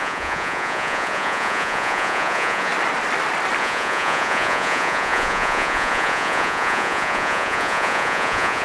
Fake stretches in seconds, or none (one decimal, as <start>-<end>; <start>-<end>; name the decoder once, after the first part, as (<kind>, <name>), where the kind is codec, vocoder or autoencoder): 0.0-2.7 (vocoder, Vocos); 3.6-8.6